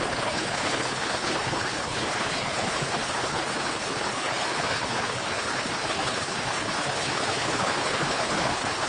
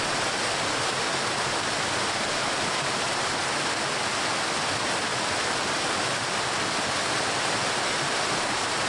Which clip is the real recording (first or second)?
second